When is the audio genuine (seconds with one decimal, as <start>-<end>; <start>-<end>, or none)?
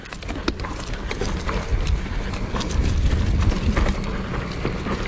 0.0-5.1